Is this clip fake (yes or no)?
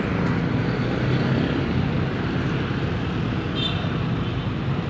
no